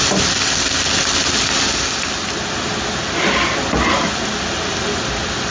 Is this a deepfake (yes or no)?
no